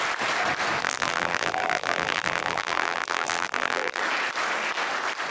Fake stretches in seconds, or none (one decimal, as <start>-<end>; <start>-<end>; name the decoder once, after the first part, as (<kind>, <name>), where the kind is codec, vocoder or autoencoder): 0.8-4.0 (vocoder, BigVGAN v2)